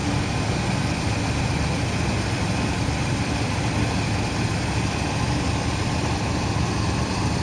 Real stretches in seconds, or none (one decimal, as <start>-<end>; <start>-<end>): 0.0-7.4